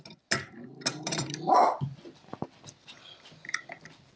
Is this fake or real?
real